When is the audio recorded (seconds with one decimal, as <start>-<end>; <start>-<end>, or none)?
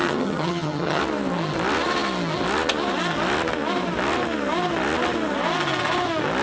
1.0-6.4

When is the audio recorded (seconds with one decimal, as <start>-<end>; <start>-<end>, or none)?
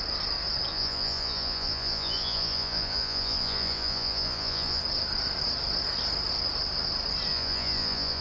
0.0-0.7; 4.8-7.3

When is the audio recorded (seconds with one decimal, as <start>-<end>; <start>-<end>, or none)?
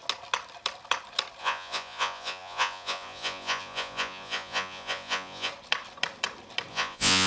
0.0-1.4; 5.5-6.7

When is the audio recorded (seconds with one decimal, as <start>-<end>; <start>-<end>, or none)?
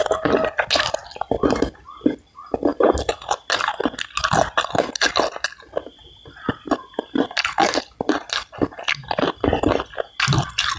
0.0-10.8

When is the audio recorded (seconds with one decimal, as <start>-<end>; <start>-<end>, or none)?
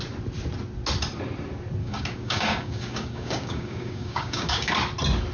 0.0-1.8; 4.7-5.3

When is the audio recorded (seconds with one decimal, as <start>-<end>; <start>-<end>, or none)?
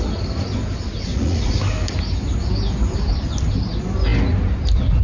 0.0-1.1; 1.6-5.0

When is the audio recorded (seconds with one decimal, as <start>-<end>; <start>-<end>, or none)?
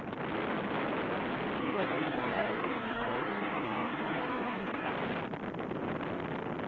0.0-1.6; 4.9-6.7